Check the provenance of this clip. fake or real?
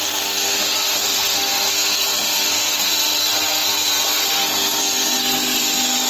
fake